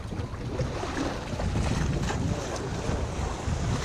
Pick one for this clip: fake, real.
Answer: real